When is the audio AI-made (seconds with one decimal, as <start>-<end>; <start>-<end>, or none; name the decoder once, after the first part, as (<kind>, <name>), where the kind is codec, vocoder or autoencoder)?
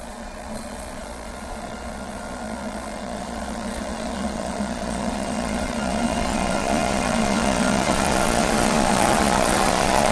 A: 0.0-10.1 (vocoder, Vocos)